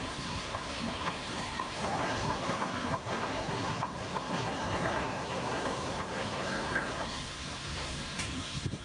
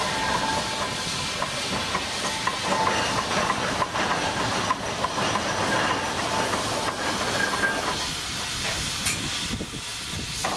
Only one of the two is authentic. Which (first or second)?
second